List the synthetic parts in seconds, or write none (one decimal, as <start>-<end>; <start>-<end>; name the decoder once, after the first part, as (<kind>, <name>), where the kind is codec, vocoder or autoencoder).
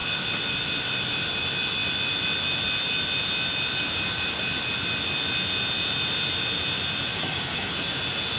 7.1-7.7 (autoencoder, DAC-VAE)